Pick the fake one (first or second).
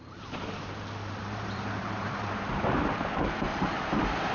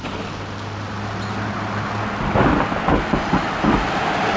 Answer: first